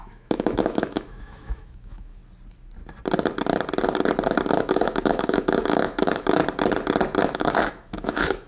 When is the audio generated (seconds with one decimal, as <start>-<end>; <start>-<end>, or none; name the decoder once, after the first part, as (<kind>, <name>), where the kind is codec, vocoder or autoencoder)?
0.0-2.2 (autoencoder, DAC-VAE); 4.6-6.4; 7.2-8.5